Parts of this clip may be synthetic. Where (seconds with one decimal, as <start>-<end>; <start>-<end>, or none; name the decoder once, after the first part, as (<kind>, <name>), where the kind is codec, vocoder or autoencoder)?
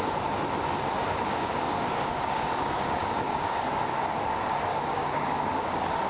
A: 1.0-4.0 (codec, DAC); 4.7-6.1